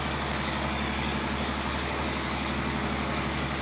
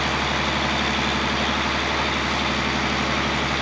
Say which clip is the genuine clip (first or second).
second